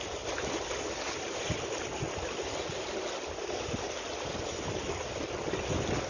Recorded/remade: recorded